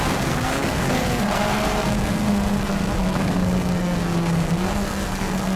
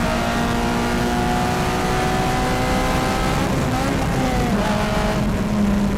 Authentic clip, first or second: second